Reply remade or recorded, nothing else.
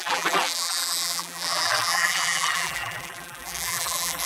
remade